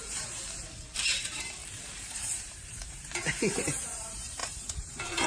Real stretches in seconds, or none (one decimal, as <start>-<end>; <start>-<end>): none